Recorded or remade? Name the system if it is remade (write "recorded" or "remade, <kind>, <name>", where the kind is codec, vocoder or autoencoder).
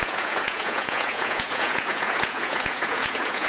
remade, vocoder, Vocos